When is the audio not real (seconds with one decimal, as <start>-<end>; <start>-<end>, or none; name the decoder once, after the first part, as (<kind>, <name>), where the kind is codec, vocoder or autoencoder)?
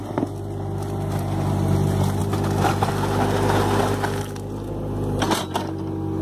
none